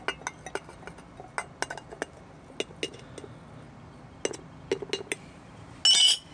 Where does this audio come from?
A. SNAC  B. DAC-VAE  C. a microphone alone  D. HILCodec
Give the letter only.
C